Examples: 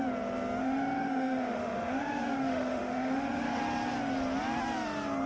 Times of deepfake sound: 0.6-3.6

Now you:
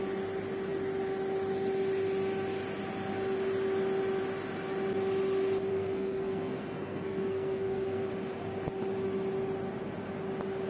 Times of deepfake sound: 5.7-8.1